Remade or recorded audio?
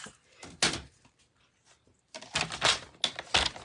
recorded